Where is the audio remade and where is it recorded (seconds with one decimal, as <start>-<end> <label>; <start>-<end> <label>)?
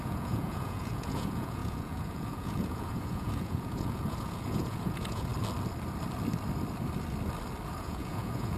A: 0.0-5.3 remade; 5.3-7.8 recorded; 7.8-8.6 remade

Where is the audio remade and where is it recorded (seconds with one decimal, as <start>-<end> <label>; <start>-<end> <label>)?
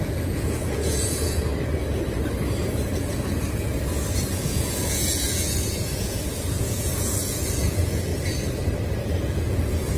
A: 0.0-1.5 remade; 1.5-4.3 recorded; 4.3-8.1 remade; 8.1-9.3 recorded; 9.3-10.0 remade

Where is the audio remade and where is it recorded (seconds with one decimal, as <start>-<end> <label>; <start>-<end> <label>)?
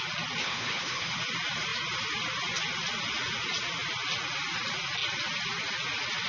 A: 0.0-0.4 recorded; 0.4-1.2 remade; 1.2-6.3 recorded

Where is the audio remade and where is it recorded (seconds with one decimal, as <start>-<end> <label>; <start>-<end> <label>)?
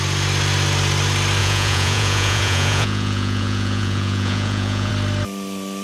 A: 0.0-1.4 recorded; 1.4-4.9 remade; 4.9-5.8 recorded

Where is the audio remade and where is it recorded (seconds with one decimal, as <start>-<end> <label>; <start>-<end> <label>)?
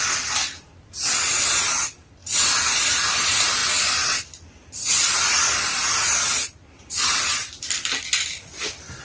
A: 0.0-9.0 recorded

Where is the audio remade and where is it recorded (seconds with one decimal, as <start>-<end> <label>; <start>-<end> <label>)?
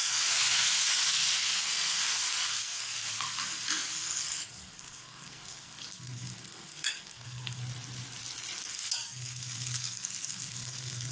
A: 0.0-7.6 remade; 7.6-8.6 recorded; 8.6-11.1 remade